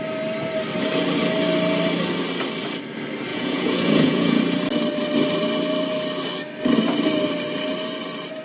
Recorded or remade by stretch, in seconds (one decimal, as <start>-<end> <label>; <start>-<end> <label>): 0.0-3.3 recorded; 3.3-4.4 remade; 4.4-8.4 recorded